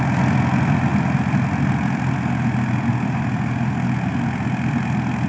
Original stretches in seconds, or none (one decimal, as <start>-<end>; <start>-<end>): 0.0-5.3